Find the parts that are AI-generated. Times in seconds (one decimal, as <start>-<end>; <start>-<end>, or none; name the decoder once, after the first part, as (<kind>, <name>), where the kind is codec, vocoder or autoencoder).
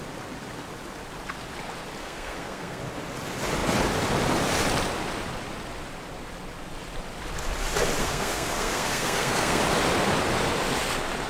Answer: 2.0-2.8 (codec, SNAC); 8.0-9.6